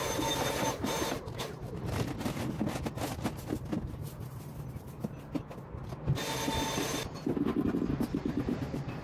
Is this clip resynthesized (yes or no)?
no